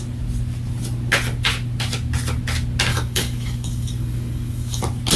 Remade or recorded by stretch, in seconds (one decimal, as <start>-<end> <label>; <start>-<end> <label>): 0.0-2.9 recorded; 2.9-4.8 remade; 4.8-5.2 recorded